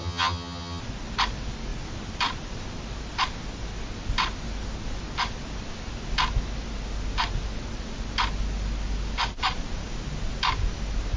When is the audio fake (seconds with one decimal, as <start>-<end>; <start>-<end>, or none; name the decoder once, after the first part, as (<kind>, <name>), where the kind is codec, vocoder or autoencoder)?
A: 0.0-0.8 (vocoder, HiFi-GAN)